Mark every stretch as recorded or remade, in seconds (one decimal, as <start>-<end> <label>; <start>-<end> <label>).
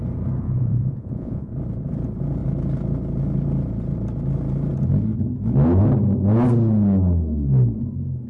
0.0-0.4 recorded; 0.4-1.5 remade; 1.5-8.3 recorded